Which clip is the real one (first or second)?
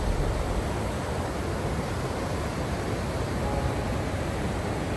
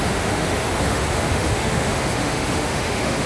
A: first